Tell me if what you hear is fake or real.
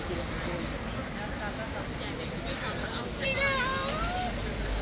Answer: real